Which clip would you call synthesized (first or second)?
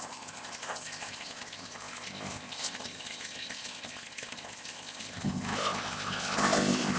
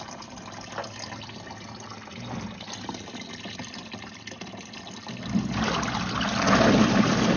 first